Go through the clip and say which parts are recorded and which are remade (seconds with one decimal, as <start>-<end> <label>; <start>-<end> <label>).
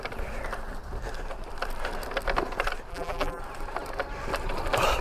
0.0-2.9 recorded; 2.9-3.4 remade; 3.4-5.0 recorded